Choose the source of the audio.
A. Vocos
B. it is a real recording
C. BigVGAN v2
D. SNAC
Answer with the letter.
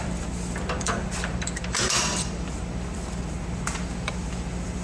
C